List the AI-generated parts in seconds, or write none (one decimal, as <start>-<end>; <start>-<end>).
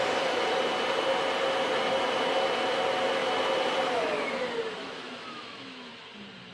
4.8-5.9